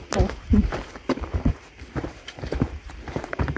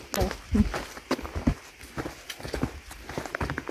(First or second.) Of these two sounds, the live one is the second